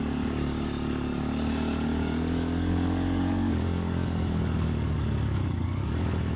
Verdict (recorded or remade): remade